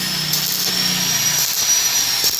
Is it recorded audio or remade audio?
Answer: recorded